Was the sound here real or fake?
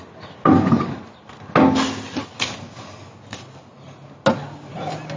real